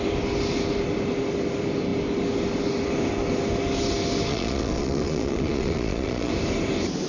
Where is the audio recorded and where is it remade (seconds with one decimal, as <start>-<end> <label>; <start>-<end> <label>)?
0.0-4.3 recorded; 4.3-6.3 remade; 6.3-7.1 recorded